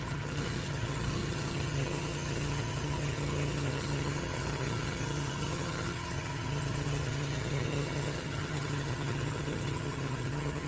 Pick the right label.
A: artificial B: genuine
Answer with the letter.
A